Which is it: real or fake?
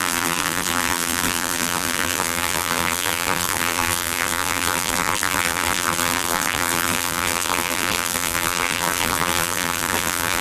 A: fake